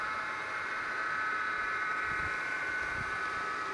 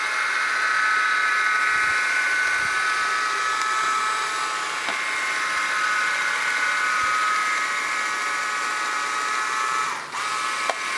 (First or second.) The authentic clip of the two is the second